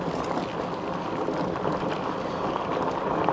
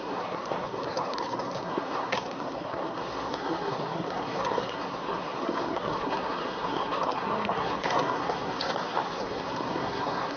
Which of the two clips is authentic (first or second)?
first